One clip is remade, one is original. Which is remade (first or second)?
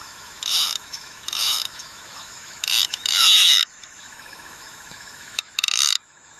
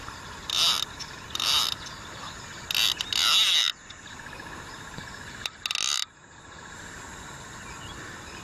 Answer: first